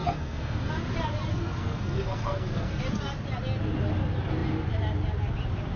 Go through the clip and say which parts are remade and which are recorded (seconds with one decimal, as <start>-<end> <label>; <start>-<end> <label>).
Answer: 0.0-0.7 remade; 0.7-1.3 recorded; 1.3-2.8 remade; 2.8-5.8 recorded